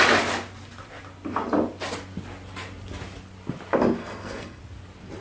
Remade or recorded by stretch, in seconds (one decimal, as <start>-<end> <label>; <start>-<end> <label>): 0.0-4.0 recorded; 4.0-4.6 remade; 4.6-5.2 recorded

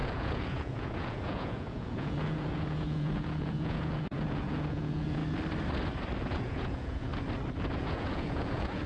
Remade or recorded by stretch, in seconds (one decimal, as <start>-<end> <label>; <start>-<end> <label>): 0.0-5.2 remade; 5.2-6.2 recorded; 6.2-7.1 remade; 7.1-7.7 recorded; 7.7-8.9 remade